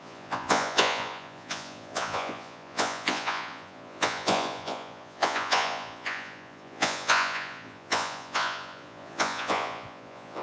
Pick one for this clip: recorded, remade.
remade